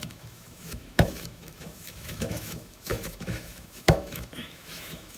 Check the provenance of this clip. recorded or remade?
remade